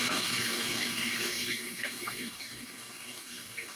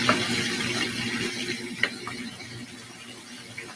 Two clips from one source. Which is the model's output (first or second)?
first